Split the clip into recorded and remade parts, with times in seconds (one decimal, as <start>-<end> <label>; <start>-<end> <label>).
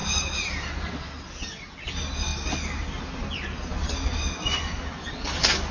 0.0-5.7 recorded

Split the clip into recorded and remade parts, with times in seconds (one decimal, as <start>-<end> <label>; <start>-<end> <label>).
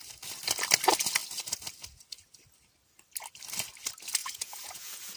0.0-4.2 recorded; 4.2-5.2 remade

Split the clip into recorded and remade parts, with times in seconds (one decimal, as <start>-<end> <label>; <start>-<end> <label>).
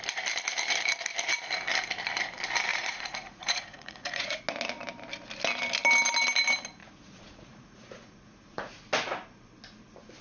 0.0-2.7 recorded; 2.7-4.4 remade; 4.4-6.8 recorded; 6.8-8.8 remade; 8.8-10.2 recorded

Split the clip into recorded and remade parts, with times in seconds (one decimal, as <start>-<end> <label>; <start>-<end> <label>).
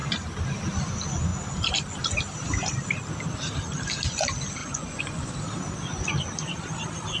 0.0-4.6 recorded; 4.6-5.3 remade; 5.3-7.2 recorded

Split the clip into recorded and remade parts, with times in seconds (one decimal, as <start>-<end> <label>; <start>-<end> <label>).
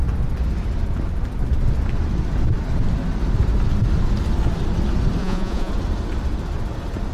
0.0-5.2 recorded; 5.2-5.7 remade; 5.7-7.1 recorded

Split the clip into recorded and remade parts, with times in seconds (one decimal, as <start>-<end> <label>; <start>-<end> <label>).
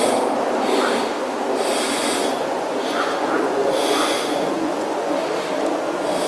0.0-2.0 recorded; 2.0-5.2 remade; 5.2-6.3 recorded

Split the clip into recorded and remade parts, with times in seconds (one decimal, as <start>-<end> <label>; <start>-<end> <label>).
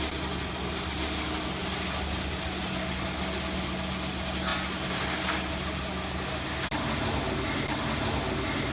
0.0-8.7 recorded